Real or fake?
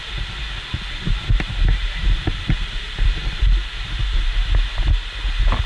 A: real